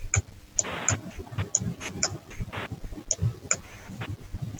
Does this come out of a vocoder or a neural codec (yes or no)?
no